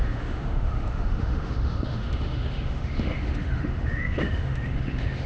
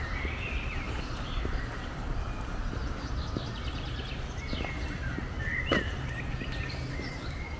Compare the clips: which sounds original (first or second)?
second